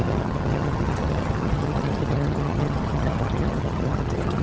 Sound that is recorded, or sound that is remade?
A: remade